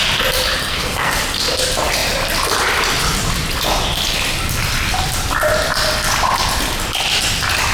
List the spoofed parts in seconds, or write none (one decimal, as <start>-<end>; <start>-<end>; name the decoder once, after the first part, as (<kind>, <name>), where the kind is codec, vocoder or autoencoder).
0.6-1.2 (codec, SNAC)